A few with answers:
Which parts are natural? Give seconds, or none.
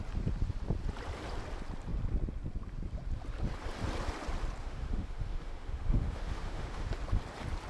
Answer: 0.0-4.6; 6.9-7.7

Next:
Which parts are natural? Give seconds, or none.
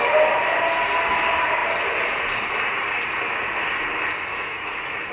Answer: 0.0-4.3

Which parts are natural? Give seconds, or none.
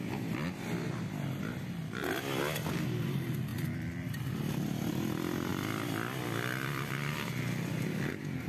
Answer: 0.0-8.5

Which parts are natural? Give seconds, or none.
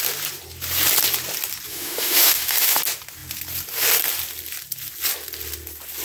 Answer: 0.0-1.7; 2.8-6.0